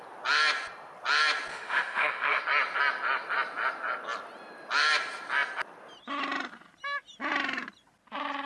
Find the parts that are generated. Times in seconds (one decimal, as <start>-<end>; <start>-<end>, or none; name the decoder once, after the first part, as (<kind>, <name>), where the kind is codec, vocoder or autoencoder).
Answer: 1.5-2.4 (autoencoder, DAC-VAE)